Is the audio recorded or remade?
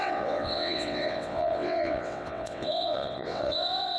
remade